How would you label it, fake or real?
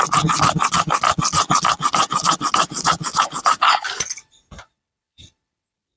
real